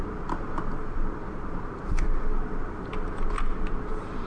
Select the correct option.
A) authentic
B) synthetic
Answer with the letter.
A